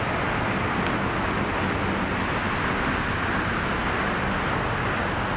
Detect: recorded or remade recorded